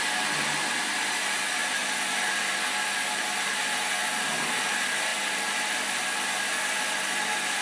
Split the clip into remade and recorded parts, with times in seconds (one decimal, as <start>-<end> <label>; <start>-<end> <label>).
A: 0.0-7.6 recorded